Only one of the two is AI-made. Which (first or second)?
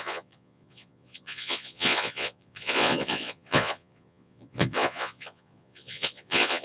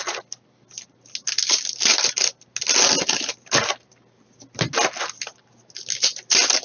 first